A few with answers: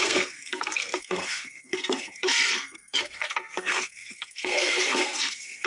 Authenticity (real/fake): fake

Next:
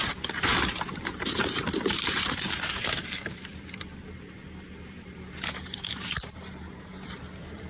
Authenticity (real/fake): fake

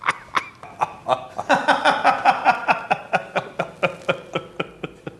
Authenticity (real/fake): real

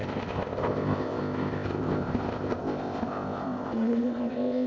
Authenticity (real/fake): fake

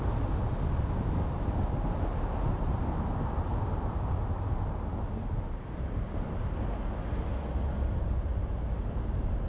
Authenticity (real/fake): real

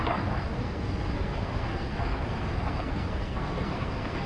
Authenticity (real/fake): fake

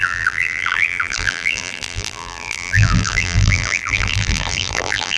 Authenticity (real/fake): fake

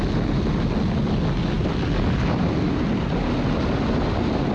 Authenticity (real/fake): real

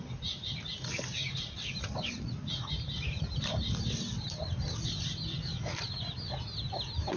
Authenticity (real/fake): real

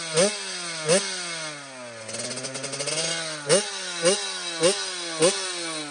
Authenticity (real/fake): real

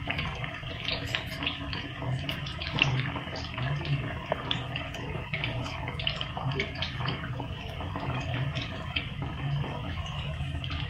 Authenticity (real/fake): fake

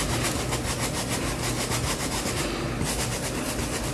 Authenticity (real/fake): real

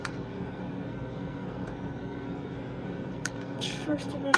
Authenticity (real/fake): fake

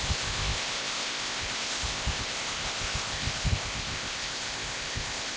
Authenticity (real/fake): fake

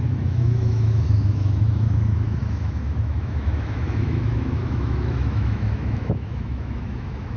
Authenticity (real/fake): fake